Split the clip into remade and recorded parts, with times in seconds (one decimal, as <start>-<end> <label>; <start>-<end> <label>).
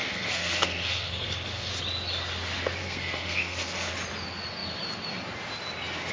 0.0-1.7 remade; 1.7-2.8 recorded; 2.8-3.9 remade; 3.9-6.1 recorded